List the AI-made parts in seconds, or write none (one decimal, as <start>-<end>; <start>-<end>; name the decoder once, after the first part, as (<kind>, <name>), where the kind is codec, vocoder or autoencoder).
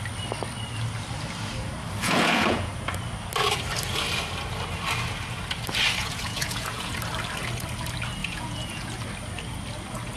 2.0-2.7 (vocoder, Vocos); 6.0-6.9; 8.2-8.9